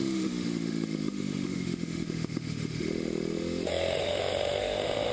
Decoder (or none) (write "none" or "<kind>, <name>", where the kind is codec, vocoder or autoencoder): autoencoder, DAC-VAE